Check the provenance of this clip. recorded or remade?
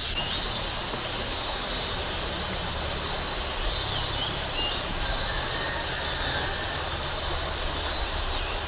recorded